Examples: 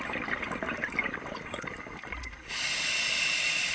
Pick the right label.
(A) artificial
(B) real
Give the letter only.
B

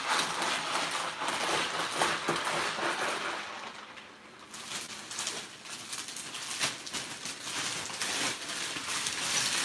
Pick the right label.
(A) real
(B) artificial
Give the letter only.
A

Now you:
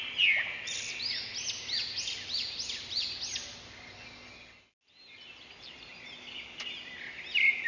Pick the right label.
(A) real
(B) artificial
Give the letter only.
A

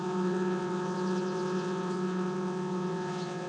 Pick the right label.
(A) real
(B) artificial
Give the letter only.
B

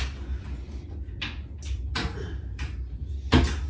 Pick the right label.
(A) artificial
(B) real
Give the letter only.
B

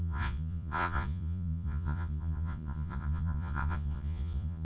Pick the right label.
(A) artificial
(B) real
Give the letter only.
A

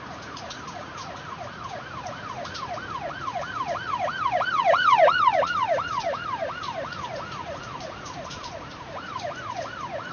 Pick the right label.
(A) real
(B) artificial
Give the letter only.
B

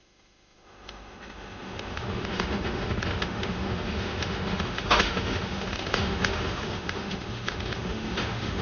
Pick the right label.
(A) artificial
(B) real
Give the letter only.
A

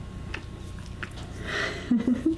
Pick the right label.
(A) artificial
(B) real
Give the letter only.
B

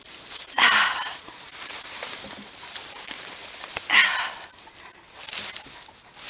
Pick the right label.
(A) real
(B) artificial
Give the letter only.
A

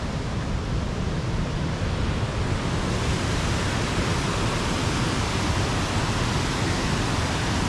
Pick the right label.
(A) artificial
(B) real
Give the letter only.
B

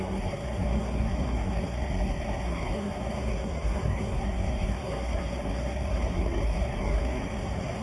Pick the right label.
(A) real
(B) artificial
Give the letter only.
B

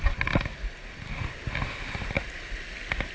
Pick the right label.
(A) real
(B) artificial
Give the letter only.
A